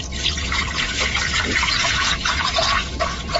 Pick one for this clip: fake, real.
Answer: fake